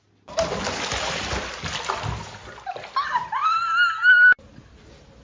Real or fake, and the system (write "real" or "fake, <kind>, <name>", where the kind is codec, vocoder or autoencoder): real